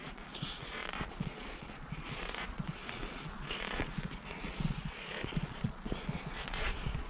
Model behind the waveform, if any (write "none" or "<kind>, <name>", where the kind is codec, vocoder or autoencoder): vocoder, Vocos